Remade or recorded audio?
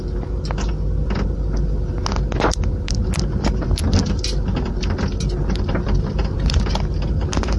recorded